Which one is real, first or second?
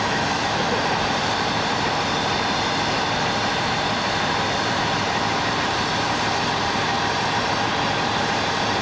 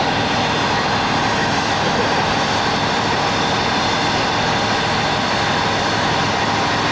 second